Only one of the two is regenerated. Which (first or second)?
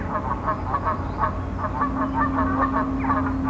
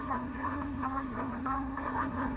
second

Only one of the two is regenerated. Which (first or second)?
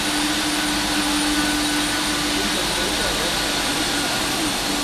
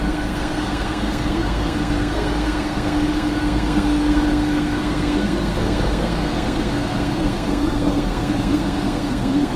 second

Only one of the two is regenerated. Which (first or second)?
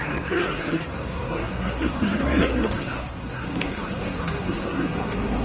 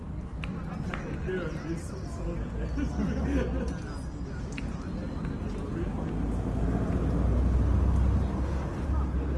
first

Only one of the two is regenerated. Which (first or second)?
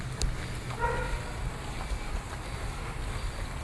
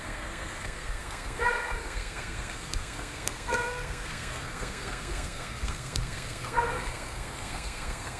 second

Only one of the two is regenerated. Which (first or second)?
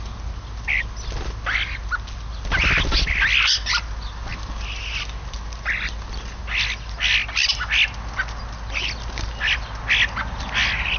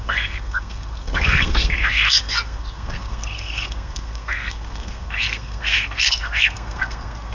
second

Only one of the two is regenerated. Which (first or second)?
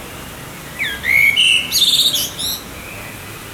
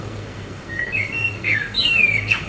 second